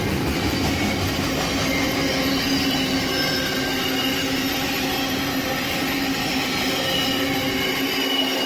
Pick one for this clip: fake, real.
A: real